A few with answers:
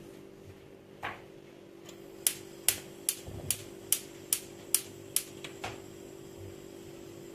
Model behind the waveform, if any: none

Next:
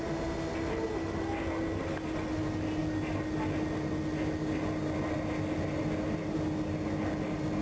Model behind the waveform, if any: none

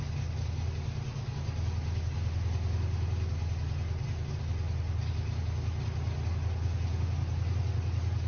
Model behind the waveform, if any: none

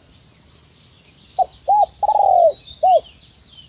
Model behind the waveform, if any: none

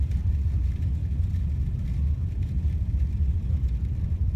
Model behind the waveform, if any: none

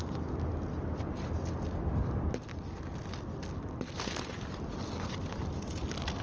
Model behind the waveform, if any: none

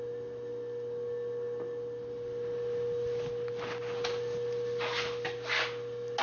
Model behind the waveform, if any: none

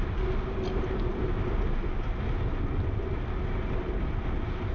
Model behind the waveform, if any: none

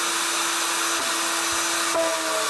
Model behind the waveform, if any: none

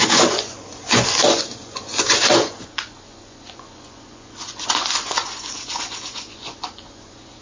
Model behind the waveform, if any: vocoder, Vocos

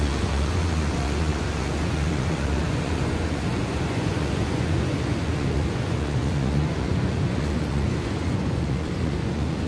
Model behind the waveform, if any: vocoder, Vocos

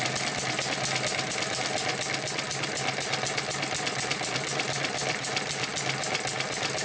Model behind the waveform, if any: none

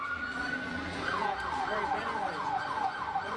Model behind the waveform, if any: vocoder, Vocos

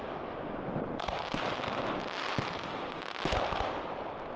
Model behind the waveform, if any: none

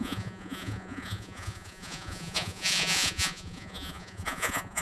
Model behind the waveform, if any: vocoder, Vocos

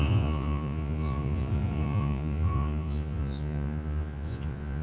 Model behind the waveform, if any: vocoder, Vocos